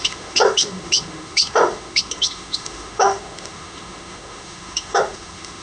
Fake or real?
fake